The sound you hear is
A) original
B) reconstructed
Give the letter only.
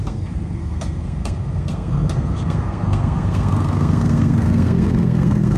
B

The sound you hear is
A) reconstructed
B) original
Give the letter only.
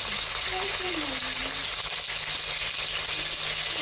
B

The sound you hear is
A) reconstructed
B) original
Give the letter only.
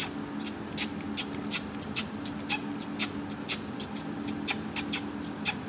B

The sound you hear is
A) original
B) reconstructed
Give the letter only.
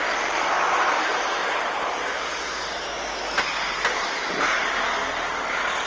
B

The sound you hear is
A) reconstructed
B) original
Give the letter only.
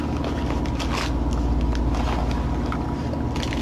B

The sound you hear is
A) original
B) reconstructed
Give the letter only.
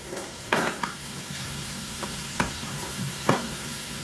B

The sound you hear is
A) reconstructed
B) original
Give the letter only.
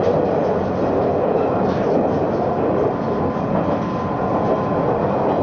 B